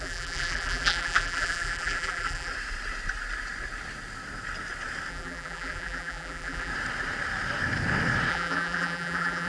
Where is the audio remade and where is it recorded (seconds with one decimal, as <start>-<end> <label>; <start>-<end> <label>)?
0.0-2.5 remade; 2.5-5.1 recorded; 5.1-6.7 remade; 6.7-8.3 recorded; 8.3-9.5 remade